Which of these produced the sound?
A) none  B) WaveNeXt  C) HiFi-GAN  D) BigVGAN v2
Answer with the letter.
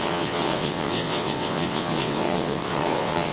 B